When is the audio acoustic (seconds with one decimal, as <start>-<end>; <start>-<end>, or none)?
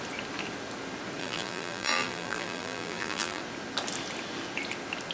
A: 0.0-1.2; 3.4-5.1